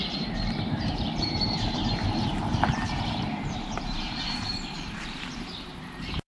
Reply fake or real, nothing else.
fake